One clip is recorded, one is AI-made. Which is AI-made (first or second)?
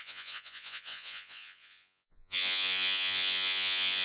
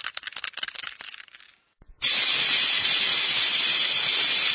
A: first